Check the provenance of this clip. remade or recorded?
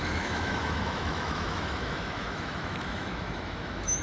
remade